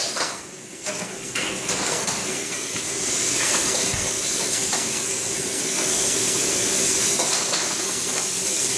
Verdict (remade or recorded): remade